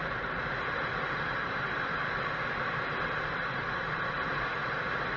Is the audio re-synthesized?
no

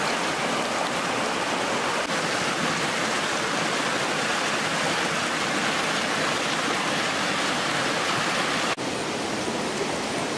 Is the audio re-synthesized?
no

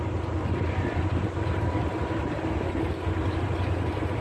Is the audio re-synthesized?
no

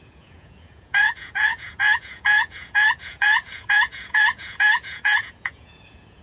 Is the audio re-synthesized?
yes